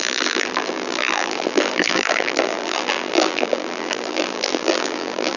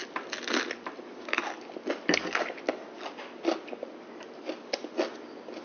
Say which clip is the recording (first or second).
second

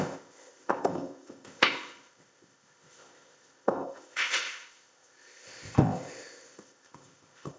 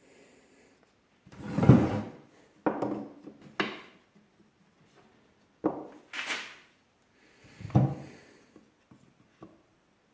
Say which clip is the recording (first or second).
second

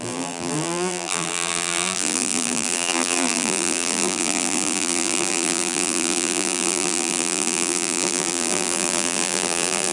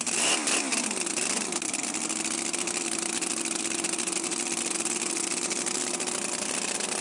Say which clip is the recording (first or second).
second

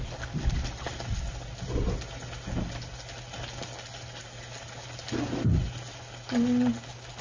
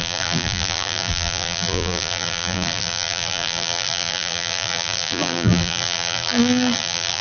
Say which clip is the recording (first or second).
first